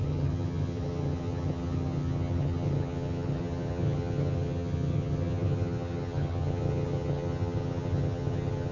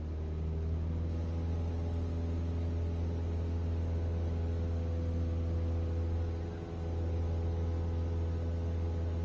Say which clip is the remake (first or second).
first